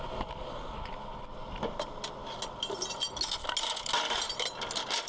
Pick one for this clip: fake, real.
real